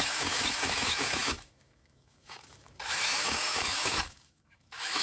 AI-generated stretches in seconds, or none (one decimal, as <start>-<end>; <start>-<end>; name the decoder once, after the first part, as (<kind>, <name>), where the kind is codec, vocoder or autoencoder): 0.0-5.0 (autoencoder, DAC-VAE)